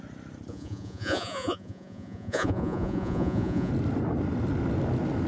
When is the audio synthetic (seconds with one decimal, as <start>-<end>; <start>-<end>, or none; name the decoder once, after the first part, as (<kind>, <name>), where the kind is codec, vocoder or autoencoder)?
0.5-3.7 (vocoder, Vocos)